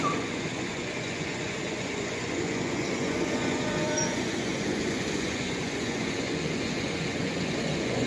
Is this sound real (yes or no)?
no